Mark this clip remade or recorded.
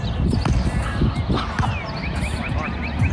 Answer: recorded